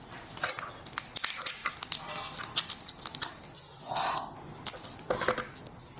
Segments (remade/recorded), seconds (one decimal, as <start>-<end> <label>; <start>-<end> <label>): 0.0-6.0 recorded